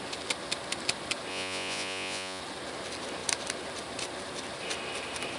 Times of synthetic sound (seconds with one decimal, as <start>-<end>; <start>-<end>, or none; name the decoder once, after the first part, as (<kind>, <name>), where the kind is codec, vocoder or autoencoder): 1.3-2.4 (vocoder, Vocos)